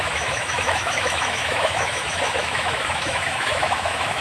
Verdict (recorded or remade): remade